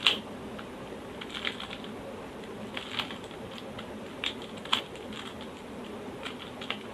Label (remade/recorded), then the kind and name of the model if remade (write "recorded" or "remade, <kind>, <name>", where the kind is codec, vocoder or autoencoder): recorded